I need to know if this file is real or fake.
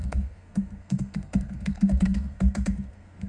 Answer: fake